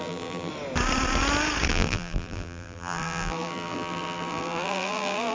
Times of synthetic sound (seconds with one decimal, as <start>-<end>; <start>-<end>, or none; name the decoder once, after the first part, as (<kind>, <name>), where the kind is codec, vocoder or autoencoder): 0.0-0.5 (vocoder, BigVGAN v2); 1.7-5.3